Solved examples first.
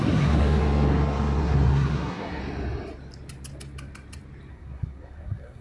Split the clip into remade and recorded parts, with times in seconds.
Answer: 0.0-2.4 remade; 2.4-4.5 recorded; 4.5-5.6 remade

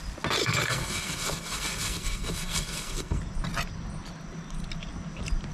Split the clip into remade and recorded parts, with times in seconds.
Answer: 0.0-0.4 recorded; 0.4-3.2 remade; 3.2-5.5 recorded

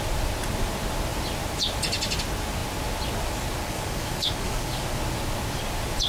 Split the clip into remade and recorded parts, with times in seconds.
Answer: 0.0-3.6 recorded; 3.6-5.0 remade; 5.0-6.1 recorded

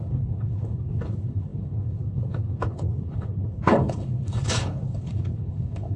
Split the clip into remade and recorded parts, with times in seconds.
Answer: 0.0-6.0 remade

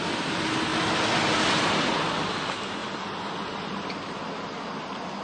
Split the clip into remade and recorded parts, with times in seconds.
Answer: 0.0-5.2 recorded

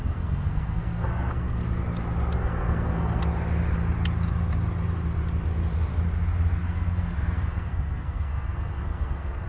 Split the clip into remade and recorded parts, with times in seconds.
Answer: 0.0-1.6 remade; 1.6-2.4 recorded; 2.4-3.2 remade; 3.2-6.6 recorded; 6.6-9.5 remade

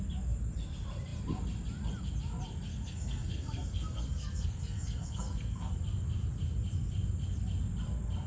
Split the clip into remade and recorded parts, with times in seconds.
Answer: 0.0-2.7 recorded; 2.7-5.7 remade; 5.7-8.3 recorded